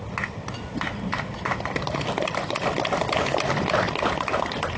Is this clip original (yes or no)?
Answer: yes